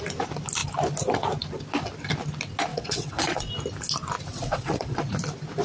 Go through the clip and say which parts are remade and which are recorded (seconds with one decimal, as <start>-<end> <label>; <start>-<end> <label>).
0.0-2.7 recorded; 2.7-3.5 remade; 3.5-4.3 recorded; 4.3-5.1 remade; 5.1-5.6 recorded